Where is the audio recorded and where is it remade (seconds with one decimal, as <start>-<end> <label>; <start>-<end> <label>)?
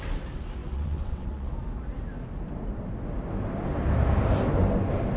0.0-0.6 recorded; 0.6-1.5 remade; 1.5-5.2 recorded